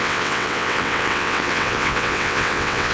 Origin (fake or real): fake